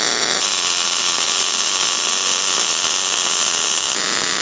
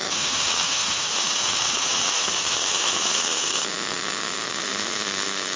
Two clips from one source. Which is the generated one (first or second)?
second